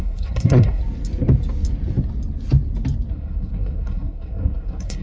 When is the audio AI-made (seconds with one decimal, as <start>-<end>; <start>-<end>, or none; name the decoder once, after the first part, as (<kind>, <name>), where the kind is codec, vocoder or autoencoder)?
0.0-0.8 (codec, SNAC); 3.1-5.0